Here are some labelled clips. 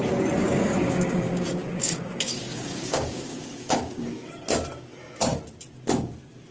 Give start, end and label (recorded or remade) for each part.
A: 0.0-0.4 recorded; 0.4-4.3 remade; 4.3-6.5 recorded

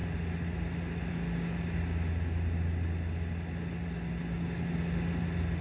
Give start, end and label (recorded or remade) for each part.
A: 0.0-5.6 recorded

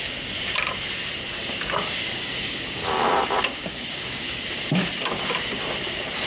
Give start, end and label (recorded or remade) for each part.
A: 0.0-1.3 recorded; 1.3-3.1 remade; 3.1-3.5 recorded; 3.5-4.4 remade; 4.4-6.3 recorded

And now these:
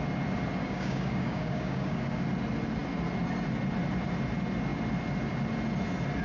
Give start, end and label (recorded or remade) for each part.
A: 0.0-0.6 recorded; 0.6-2.0 remade; 2.0-6.2 recorded

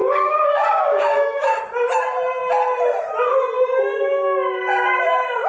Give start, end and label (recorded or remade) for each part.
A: 0.0-1.6 remade; 1.6-5.5 recorded

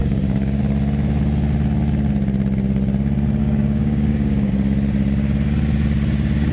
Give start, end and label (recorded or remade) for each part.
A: 0.0-0.6 remade; 0.6-3.4 recorded; 3.4-4.5 remade; 4.5-6.5 recorded

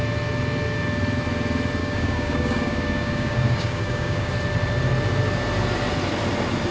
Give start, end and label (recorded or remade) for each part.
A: 0.0-1.8 recorded; 1.8-4.3 remade; 4.3-6.7 recorded